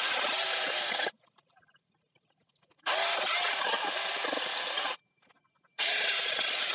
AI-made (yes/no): no